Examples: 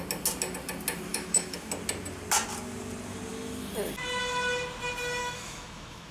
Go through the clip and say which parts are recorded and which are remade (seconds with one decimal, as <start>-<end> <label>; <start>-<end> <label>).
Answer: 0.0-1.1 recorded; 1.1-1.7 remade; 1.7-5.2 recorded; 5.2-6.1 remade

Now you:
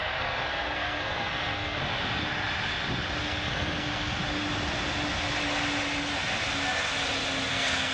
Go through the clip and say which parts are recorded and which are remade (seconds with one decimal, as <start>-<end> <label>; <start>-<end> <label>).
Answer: 0.0-1.8 remade; 1.8-3.2 recorded; 3.2-4.2 remade; 4.2-7.5 recorded; 7.5-7.9 remade

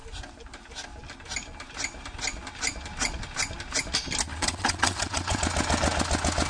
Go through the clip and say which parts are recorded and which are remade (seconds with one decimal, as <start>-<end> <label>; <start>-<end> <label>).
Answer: 0.0-4.3 recorded; 4.3-5.4 remade; 5.4-6.5 recorded

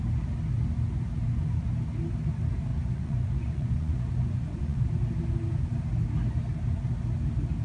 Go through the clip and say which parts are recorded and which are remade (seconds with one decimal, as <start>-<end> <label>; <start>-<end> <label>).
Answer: 0.0-2.7 recorded; 2.7-4.8 remade; 4.8-7.6 recorded

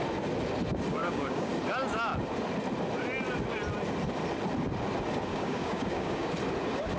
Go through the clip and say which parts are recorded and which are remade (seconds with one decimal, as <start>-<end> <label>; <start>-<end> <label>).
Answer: 0.0-0.9 recorded; 0.9-1.5 remade; 1.5-5.3 recorded; 5.3-6.3 remade; 6.3-7.0 recorded

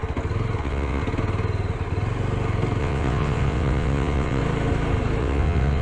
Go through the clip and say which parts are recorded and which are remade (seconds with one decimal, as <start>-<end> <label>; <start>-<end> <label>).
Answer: 0.0-0.6 recorded; 0.6-1.0 remade; 1.0-2.8 recorded; 2.8-4.4 remade; 4.4-5.2 recorded; 5.2-5.8 remade